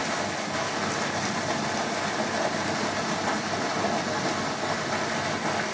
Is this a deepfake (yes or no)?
no